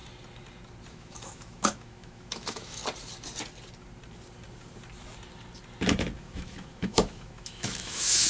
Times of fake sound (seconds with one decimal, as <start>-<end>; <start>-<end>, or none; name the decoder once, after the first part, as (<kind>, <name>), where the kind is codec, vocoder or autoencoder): 0.9-2.8 (autoencoder, DAC-VAE); 6.2-8.3